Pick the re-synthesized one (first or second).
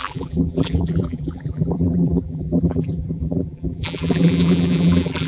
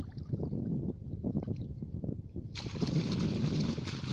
first